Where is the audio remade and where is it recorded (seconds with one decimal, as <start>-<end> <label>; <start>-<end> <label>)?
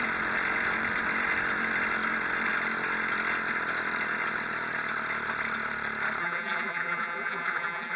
0.0-6.2 recorded; 6.2-8.0 remade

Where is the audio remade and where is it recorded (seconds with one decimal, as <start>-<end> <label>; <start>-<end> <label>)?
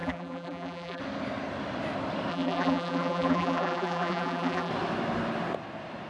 0.0-1.0 remade; 1.0-2.3 recorded; 2.3-4.7 remade; 4.7-6.1 recorded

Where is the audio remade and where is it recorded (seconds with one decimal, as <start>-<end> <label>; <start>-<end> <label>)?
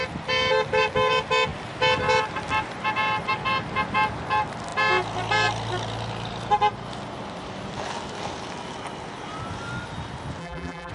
0.0-10.4 recorded; 10.4-10.9 remade